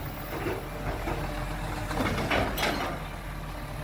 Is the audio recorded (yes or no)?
yes